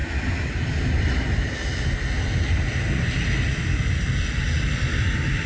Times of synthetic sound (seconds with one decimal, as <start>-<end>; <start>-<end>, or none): none